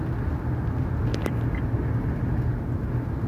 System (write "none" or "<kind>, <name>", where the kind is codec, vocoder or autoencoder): none